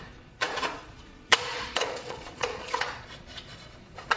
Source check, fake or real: fake